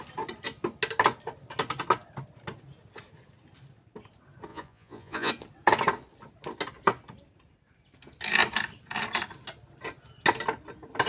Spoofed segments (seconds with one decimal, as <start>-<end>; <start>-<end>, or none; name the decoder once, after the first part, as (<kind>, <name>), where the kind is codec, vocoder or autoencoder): 4.5-5.3 (vocoder, Vocos)